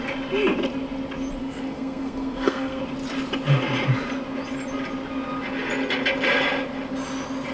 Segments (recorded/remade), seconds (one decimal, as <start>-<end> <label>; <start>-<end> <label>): 0.0-1.4 recorded; 1.4-2.8 remade; 2.8-7.5 recorded